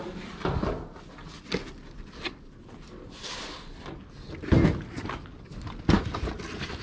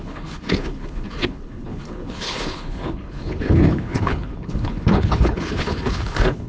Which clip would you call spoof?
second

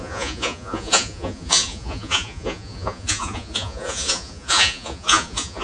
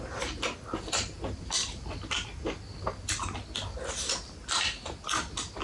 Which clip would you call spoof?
first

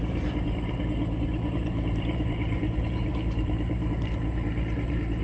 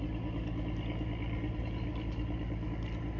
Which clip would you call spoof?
first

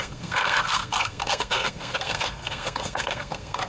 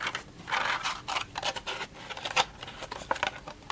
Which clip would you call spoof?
first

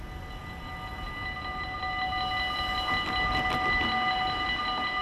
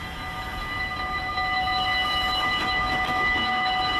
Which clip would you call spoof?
second